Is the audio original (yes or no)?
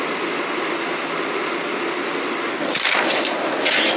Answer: yes